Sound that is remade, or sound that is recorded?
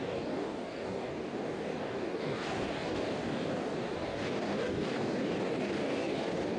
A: remade